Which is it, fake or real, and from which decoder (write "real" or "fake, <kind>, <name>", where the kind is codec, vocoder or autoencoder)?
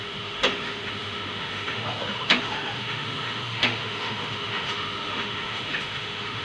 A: fake, autoencoder, DAC-VAE